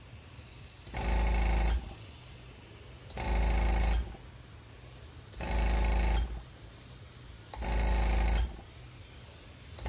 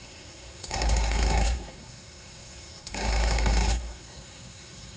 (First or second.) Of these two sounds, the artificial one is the second